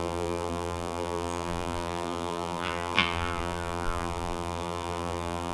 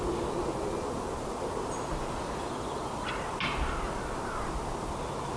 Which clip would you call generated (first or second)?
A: first